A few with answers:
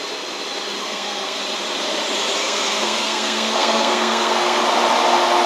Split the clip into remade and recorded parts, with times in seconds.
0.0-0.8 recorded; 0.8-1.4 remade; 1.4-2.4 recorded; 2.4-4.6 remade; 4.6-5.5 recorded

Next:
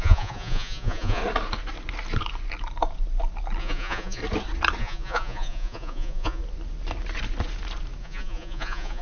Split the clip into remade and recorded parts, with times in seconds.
0.0-1.2 remade; 1.2-3.6 recorded; 3.6-4.2 remade; 4.2-4.8 recorded; 4.8-6.4 remade; 6.4-8.0 recorded; 8.0-9.0 remade

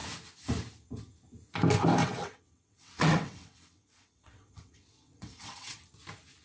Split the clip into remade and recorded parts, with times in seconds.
0.0-2.0 recorded; 2.0-5.8 remade; 5.8-6.4 recorded

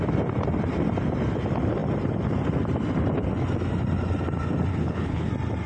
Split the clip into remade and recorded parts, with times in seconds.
0.0-4.7 recorded; 4.7-5.3 remade; 5.3-5.7 recorded

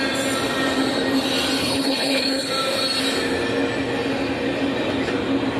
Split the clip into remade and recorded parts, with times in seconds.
0.0-1.6 recorded; 1.6-2.5 remade; 2.5-5.6 recorded